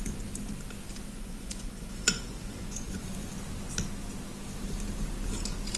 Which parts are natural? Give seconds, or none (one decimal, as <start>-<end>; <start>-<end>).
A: 0.0-1.1; 3.0-5.8